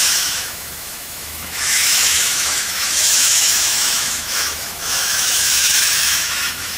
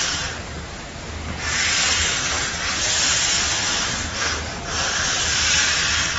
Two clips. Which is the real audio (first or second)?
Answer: second